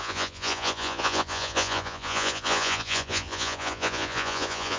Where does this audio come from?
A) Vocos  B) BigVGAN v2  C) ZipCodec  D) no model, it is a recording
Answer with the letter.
A